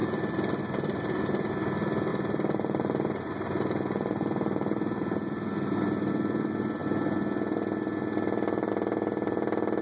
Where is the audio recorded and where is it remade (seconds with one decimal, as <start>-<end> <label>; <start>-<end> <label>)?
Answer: 0.0-1.5 remade; 1.5-2.1 recorded; 2.1-6.1 remade; 6.1-9.8 recorded